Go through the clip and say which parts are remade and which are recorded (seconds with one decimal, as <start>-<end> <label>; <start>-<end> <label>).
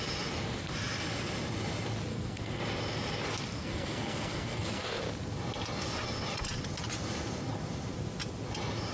0.0-2.1 recorded; 2.1-2.6 remade; 2.6-3.6 recorded; 3.6-5.0 remade; 5.0-8.9 recorded